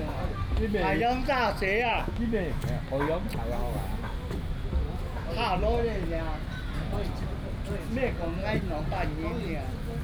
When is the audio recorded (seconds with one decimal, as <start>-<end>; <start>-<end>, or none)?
0.0-1.9; 2.8-10.0